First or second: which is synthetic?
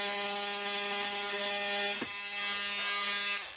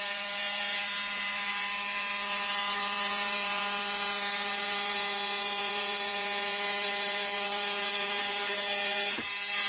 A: second